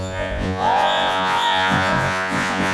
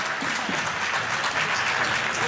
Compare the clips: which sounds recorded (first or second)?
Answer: second